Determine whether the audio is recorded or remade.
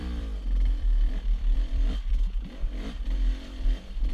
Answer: remade